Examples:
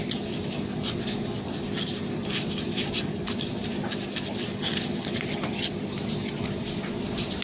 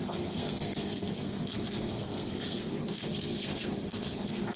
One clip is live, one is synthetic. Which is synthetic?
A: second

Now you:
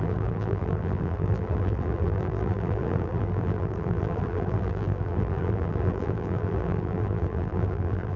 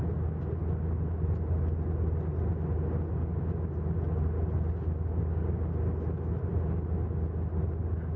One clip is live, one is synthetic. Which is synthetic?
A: first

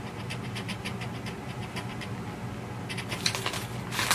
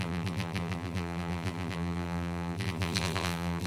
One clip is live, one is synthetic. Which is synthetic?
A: second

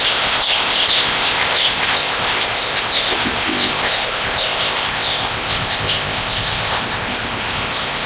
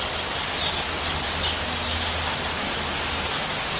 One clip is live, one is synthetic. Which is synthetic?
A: first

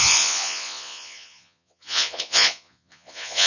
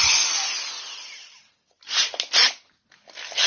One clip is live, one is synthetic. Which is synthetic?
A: first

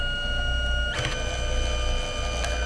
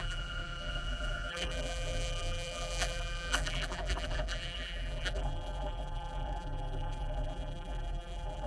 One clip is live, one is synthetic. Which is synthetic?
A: second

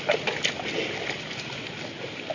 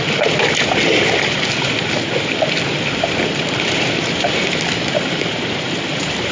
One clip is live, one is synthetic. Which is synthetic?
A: second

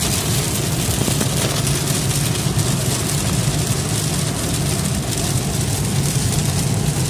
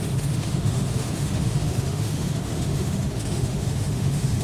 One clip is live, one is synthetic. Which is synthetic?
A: second